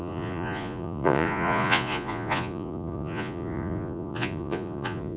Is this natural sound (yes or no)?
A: no